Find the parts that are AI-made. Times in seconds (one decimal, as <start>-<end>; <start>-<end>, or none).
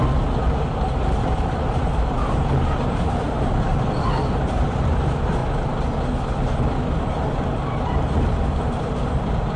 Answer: 0.8-5.4; 7.1-9.6